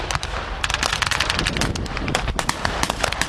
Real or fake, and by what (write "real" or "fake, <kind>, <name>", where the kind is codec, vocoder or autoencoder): real